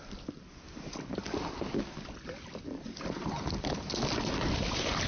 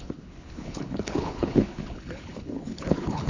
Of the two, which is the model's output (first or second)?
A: second